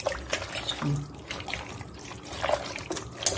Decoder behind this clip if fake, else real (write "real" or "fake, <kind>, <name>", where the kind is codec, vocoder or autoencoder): real